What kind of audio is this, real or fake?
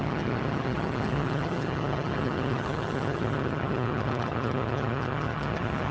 fake